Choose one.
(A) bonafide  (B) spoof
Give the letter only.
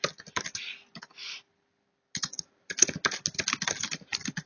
A